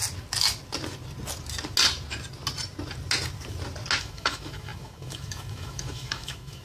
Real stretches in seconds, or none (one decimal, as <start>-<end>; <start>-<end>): 0.0-4.0